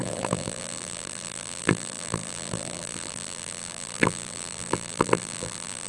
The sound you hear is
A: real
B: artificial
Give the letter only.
B